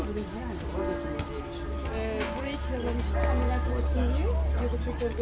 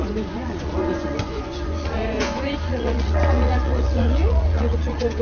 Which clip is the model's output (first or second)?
second